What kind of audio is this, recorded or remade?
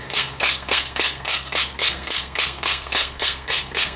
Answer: remade